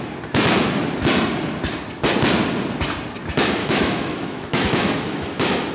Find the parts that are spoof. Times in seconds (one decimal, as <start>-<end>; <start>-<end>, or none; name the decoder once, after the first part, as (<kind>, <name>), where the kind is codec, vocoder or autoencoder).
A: 3.6-5.7 (autoencoder, DAC-VAE)